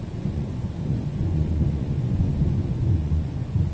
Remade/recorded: remade